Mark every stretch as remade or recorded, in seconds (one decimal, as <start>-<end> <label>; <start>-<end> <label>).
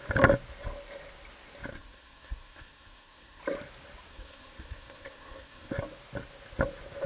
0.0-1.7 recorded; 1.7-3.4 remade; 3.4-4.1 recorded; 4.1-5.7 remade; 5.7-7.1 recorded